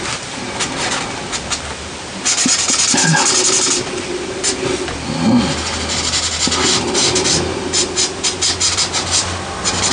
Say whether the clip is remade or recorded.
recorded